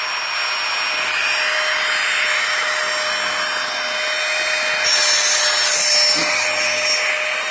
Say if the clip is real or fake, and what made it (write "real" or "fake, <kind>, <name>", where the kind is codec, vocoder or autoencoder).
real